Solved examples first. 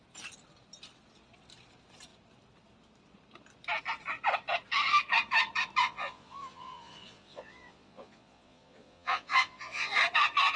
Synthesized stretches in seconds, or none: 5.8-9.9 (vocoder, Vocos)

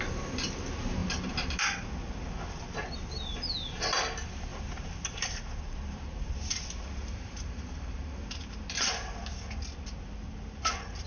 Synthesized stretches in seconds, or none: 4.5-6.3 (vocoder, BigVGAN v2); 7.0-9.2

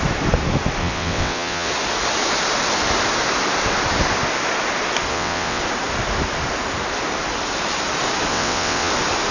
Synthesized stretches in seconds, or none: 0.8-1.7 (vocoder, WaveNeXt); 5.1-5.6; 8.3-8.9

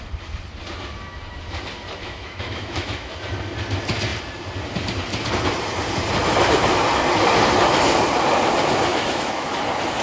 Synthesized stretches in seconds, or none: 2.0-3.1 (autoencoder, DAC-VAE); 8.9-9.6

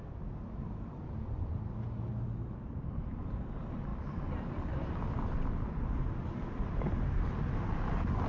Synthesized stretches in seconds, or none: none

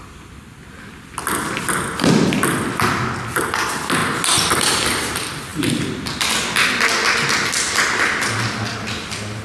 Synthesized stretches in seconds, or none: none

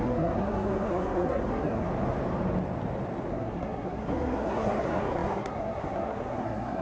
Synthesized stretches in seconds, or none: 0.0-1.9 (codec, SNAC); 3.3-6.8